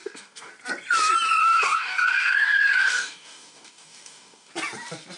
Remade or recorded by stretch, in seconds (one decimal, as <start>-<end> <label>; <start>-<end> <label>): 0.0-0.5 remade; 0.5-1.4 recorded; 1.4-4.5 remade; 4.5-5.2 recorded